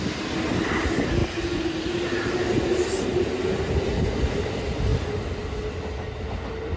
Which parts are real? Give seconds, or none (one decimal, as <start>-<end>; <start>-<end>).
0.0-6.8